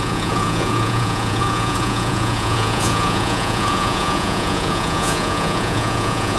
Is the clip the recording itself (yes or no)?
no